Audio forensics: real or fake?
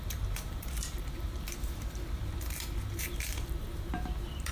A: fake